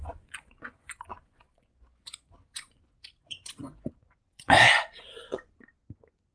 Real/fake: fake